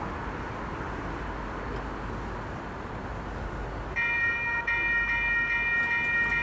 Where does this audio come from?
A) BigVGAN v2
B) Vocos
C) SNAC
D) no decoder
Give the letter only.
D